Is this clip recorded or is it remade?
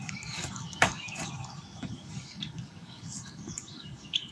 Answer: remade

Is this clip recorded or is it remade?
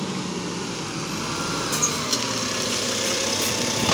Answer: recorded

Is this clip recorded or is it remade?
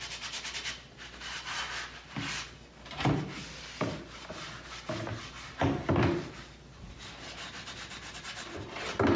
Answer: recorded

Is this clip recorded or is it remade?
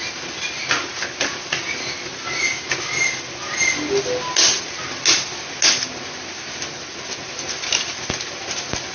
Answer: recorded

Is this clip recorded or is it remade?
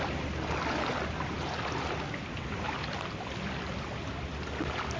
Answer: recorded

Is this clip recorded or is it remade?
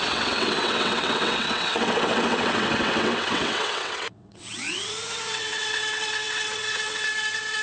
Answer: remade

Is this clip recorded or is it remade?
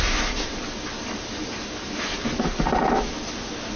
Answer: remade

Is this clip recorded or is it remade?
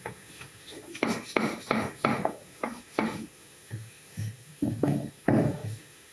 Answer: remade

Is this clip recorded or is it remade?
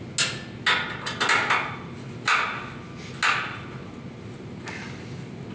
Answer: recorded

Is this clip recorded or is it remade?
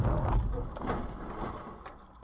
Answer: recorded